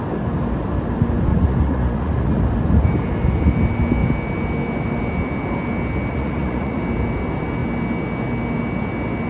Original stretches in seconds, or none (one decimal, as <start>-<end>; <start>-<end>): 0.0-1.3; 2.4-6.1; 6.8-9.3